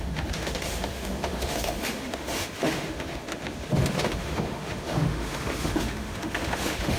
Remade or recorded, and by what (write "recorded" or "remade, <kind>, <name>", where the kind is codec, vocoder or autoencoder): remade, autoencoder, DAC-VAE